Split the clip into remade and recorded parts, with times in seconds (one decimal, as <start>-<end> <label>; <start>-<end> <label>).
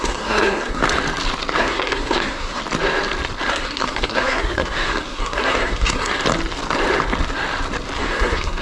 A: 0.0-0.8 remade; 0.8-1.6 recorded; 1.6-2.6 remade; 2.6-3.5 recorded; 3.5-6.1 remade; 6.1-8.0 recorded; 8.0-8.6 remade